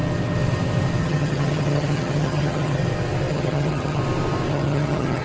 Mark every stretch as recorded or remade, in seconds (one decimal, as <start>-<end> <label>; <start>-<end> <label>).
0.0-1.0 recorded; 1.0-2.8 remade; 2.8-3.3 recorded; 3.3-4.0 remade; 4.0-4.5 recorded; 4.5-5.2 remade